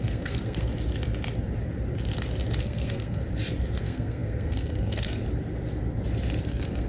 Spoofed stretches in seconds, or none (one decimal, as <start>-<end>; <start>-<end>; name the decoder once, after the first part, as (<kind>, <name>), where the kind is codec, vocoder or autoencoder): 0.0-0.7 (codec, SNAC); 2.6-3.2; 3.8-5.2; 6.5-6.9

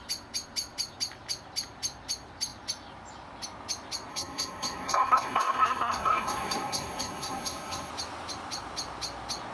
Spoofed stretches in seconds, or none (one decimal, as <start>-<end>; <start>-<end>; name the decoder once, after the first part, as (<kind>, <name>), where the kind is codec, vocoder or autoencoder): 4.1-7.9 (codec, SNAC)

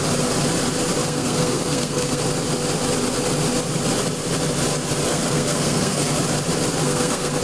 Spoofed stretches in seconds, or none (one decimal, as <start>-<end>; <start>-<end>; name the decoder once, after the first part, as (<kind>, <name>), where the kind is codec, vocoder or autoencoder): 1.0-2.2 (codec, SNAC); 5.1-6.2; 6.8-7.4

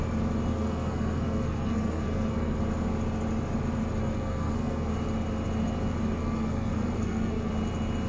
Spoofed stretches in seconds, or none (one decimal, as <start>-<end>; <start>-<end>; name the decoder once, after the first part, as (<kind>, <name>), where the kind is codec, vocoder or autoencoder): 0.5-2.6 (codec, SNAC); 4.0-4.9; 6.2-7.5

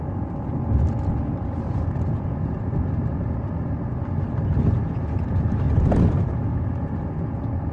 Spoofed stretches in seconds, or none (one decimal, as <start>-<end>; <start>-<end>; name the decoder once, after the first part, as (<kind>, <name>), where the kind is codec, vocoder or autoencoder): none

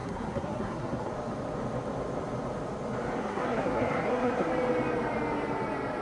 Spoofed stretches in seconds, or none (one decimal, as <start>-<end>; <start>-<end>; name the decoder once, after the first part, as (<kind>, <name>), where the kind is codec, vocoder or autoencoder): 0.0-1.1 (codec, SNAC); 3.2-4.5